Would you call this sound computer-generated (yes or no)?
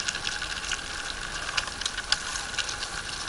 no